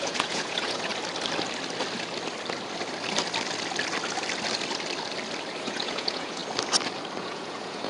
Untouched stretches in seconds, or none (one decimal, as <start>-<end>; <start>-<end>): 0.9-5.6; 6.4-7.2